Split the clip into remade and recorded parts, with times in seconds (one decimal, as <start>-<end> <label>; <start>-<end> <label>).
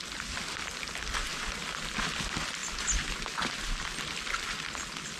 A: 0.0-5.2 recorded